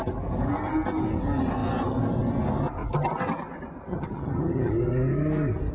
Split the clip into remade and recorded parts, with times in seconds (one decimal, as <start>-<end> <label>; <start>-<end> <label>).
0.0-3.9 recorded; 3.9-4.7 remade; 4.7-5.7 recorded